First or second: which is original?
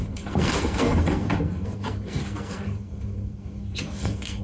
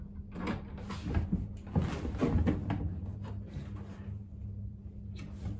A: second